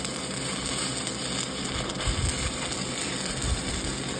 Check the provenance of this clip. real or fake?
real